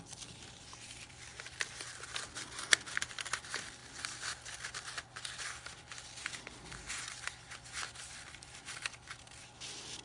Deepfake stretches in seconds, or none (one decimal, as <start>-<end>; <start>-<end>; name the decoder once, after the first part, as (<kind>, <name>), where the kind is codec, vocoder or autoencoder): 0.0-1.3 (vocoder, BigVGAN v2); 3.1-3.8; 7.9-10.0